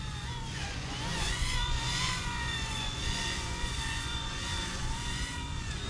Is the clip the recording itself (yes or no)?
no